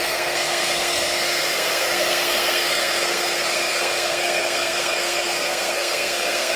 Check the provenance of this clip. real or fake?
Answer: fake